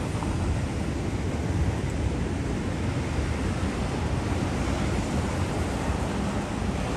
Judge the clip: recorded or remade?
recorded